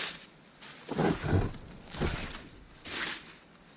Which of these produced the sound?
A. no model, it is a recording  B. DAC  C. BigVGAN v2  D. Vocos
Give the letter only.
A